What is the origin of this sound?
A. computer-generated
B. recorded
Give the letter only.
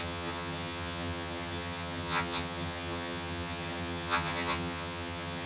A